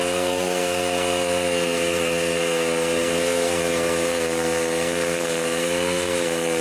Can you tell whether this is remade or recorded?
remade